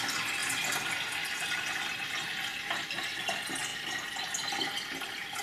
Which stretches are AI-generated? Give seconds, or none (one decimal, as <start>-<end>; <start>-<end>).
none